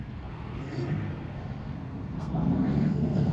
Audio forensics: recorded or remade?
remade